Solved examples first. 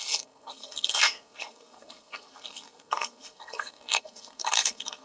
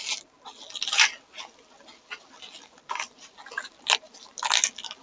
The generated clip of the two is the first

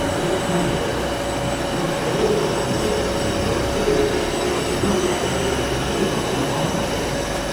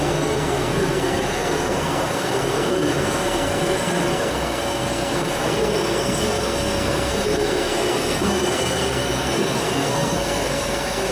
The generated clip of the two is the second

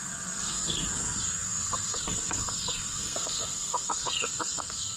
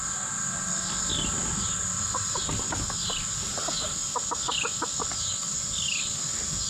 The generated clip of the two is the first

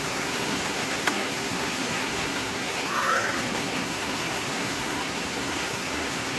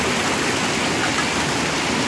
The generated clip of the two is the first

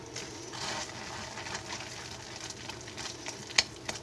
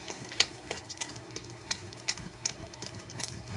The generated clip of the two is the second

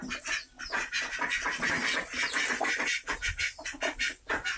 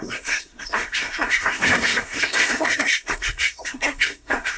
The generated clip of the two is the second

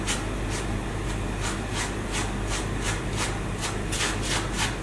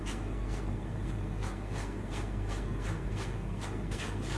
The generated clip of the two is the second